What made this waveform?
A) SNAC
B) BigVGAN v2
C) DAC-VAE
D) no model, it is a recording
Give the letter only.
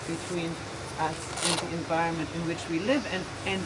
D